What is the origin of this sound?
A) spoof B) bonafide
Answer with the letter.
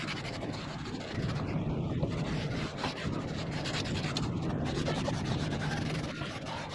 A